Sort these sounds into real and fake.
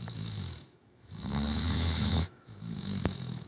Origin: fake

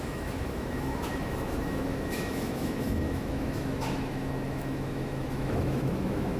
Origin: fake